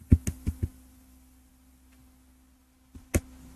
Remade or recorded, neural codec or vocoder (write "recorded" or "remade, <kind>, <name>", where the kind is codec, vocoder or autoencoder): recorded